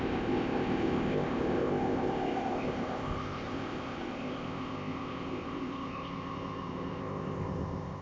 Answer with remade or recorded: remade